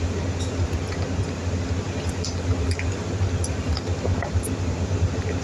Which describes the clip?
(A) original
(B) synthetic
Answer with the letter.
A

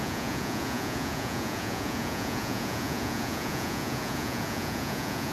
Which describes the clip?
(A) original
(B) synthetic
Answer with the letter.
B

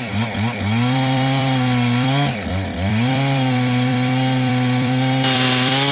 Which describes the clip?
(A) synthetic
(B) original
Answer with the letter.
A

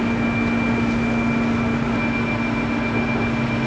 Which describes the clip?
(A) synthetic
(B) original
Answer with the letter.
B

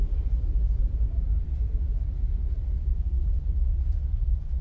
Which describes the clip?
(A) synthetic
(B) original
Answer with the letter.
A